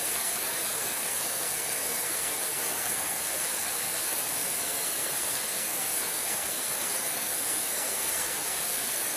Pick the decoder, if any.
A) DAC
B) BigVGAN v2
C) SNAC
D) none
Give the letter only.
C